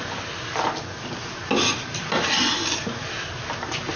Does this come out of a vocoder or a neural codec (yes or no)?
no